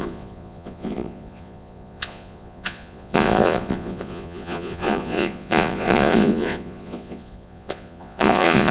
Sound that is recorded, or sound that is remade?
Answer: remade